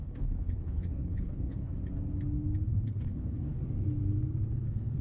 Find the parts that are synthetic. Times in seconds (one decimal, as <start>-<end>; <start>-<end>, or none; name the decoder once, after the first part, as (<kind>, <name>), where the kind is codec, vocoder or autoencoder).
0.0-1.7 (codec, HILCodec); 2.7-3.6; 4.5-5.0